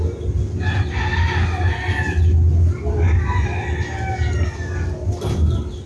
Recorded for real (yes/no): yes